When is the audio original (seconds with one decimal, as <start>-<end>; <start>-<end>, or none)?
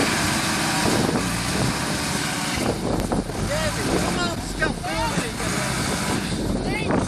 0.0-7.1